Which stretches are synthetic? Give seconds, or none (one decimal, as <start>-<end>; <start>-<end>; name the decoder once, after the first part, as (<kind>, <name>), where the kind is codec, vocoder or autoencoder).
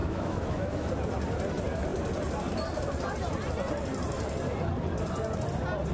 0.0-0.9 (autoencoder, DAC-VAE)